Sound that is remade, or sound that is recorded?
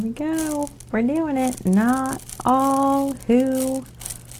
recorded